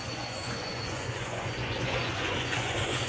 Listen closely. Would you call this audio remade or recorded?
remade